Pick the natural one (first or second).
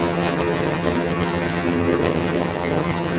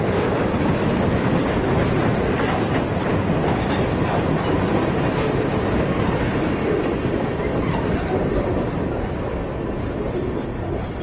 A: second